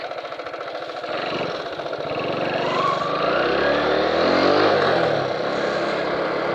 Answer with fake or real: real